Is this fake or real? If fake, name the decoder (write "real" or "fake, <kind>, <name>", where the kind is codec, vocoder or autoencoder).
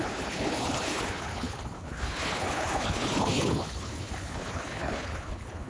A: fake, codec, HILCodec